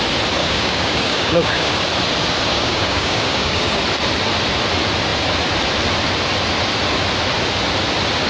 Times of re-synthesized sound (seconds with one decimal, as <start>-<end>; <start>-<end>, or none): 0.4-1.7; 2.5-3.8